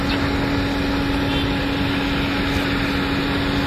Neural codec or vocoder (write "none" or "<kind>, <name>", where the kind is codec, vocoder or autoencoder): none